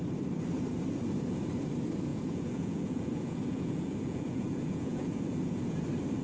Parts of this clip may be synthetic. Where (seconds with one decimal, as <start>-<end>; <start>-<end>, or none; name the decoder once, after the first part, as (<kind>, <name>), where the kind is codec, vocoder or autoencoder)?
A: 2.1-5.8 (vocoder, Vocos)